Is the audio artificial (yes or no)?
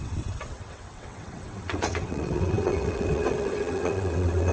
yes